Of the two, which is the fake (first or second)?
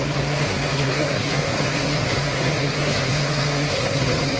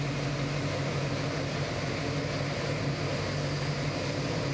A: first